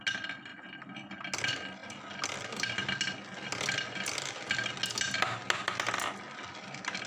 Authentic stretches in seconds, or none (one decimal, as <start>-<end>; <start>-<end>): 0.0-7.1